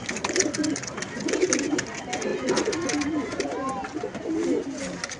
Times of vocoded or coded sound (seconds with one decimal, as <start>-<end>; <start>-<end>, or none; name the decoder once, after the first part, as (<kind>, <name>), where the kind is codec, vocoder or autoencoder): none